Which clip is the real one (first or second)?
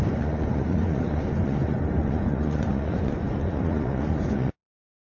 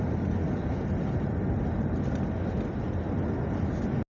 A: second